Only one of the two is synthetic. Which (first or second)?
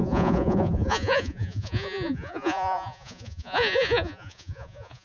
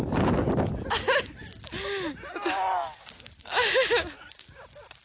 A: first